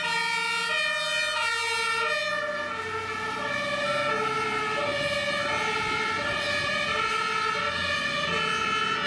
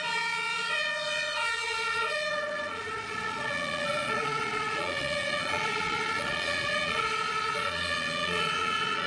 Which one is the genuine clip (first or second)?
first